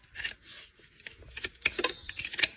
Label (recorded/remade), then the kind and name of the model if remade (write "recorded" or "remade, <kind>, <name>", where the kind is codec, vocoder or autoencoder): recorded